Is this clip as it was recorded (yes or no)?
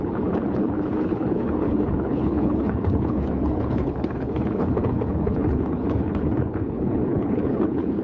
no